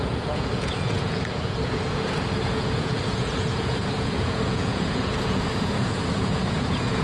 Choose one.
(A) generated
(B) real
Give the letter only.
A